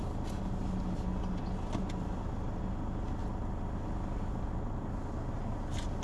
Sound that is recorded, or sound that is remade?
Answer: recorded